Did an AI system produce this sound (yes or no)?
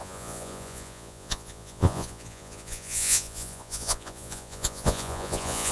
yes